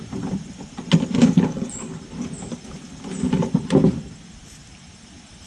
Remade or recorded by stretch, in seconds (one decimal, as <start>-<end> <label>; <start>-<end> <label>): 0.0-1.2 recorded; 1.2-2.0 remade; 2.0-5.5 recorded